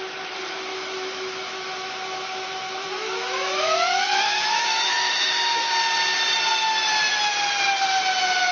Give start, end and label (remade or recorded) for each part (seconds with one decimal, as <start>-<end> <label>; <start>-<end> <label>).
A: 0.0-0.7 recorded; 0.7-5.7 remade; 5.7-8.5 recorded